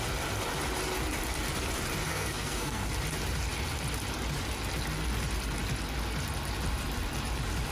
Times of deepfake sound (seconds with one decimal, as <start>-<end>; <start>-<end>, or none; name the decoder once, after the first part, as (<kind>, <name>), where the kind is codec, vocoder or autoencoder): 2.1-2.9 (codec, SNAC)

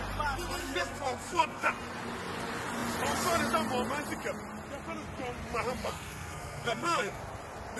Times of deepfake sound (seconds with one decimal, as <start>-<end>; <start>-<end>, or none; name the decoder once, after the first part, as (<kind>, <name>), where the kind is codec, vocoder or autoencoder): 0.6-1.7 (codec, SNAC); 5.8-7.2

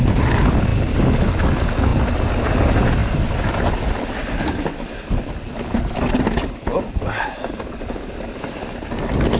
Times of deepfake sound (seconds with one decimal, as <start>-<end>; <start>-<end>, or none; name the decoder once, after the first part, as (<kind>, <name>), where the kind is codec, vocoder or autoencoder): none

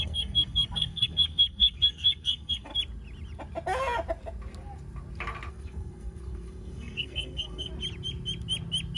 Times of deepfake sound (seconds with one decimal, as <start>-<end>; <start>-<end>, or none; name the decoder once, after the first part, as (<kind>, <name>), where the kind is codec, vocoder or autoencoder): 0.0-2.7 (codec, SNAC); 5.5-7.7

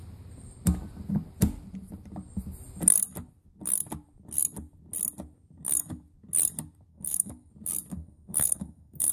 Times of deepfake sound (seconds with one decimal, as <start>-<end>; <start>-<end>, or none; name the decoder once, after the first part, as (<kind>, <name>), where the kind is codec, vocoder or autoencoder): 6.9-7.5 (codec, SNAC); 7.9-9.1

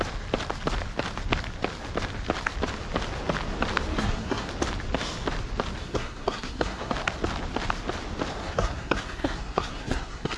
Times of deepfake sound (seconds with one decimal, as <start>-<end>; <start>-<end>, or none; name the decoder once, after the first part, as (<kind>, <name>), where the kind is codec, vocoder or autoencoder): 3.9-4.5 (codec, SNAC); 5.8-6.9; 8.4-10.4